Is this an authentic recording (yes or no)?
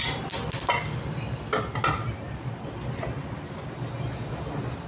yes